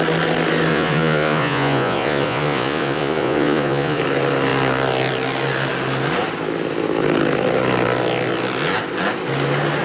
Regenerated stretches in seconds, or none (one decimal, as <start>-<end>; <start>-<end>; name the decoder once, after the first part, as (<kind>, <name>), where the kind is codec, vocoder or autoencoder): 0.7-4.0 (vocoder, Vocos)